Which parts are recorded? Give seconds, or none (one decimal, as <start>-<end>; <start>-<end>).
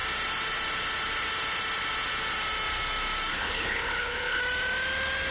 0.0-3.3; 4.4-5.3